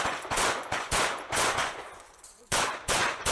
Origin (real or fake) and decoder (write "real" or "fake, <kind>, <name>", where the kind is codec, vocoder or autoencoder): fake, vocoder, Vocos